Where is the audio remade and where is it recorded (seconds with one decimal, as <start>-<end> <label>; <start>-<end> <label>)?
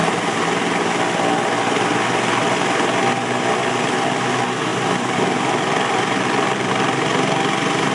0.0-4.7 recorded; 4.7-6.7 remade; 6.7-7.9 recorded